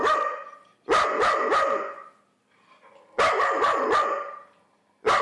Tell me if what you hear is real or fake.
real